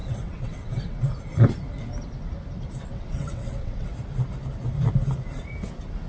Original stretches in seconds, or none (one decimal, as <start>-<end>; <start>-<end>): 1.1-2.9; 3.9-6.1